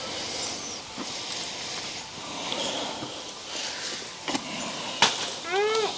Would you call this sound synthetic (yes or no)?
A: no